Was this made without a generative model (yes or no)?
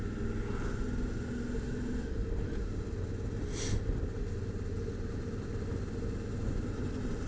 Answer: yes